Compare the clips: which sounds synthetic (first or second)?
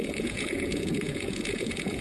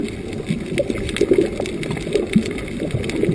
first